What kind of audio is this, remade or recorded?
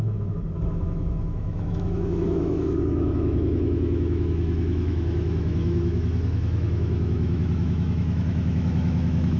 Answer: remade